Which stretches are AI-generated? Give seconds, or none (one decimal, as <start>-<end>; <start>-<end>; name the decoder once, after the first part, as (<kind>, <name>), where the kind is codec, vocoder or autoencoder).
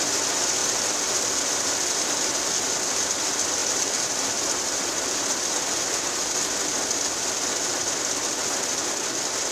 0.6-1.6 (vocoder, BigVGAN v2); 3.6-6.3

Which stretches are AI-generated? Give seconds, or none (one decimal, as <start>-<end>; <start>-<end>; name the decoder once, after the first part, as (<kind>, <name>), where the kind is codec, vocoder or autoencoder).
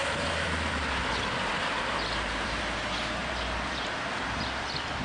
0.0-0.9 (vocoder, BigVGAN v2); 1.5-2.6; 3.2-4.4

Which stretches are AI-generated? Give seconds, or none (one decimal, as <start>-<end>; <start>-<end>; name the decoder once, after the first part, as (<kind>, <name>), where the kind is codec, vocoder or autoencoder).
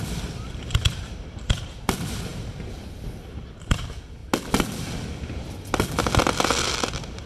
0.0-2.3 (vocoder, BigVGAN v2); 3.3-4.2; 6.7-7.3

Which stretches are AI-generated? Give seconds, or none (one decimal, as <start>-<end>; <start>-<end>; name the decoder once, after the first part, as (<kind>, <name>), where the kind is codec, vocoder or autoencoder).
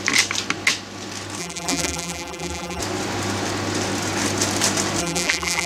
1.4-2.8 (vocoder, BigVGAN v2); 5.0-5.7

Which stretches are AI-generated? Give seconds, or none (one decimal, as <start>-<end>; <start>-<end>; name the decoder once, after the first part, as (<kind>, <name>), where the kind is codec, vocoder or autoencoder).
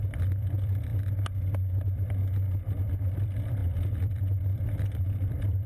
0.0-0.9 (vocoder, BigVGAN v2); 1.7-2.2; 3.0-5.7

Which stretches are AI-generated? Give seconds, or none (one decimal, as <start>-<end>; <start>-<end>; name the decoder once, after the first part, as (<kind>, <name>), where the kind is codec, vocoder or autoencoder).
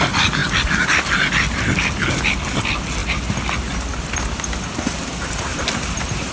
5.5-6.3 (vocoder, BigVGAN v2)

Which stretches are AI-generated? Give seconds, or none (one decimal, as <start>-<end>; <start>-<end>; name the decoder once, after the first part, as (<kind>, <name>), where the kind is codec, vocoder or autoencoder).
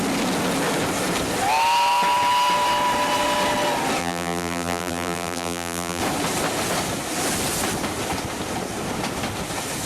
4.0-6.0 (vocoder, BigVGAN v2)